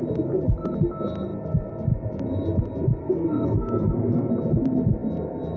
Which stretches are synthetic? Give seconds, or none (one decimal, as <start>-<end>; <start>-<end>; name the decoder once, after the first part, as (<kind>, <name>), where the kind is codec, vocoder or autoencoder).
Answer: 3.0-4.3 (codec, SNAC)